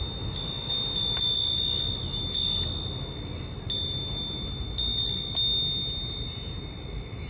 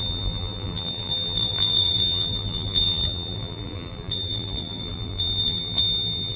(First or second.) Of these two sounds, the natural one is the first